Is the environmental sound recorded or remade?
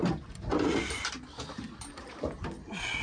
recorded